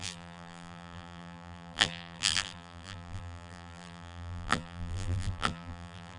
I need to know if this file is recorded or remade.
remade